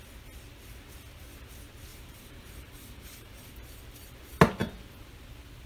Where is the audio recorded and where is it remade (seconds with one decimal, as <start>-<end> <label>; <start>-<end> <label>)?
0.0-1.9 recorded; 1.9-3.5 remade; 3.5-5.7 recorded